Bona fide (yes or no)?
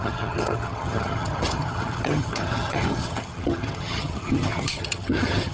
no